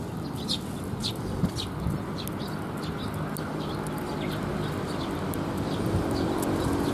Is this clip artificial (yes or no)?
no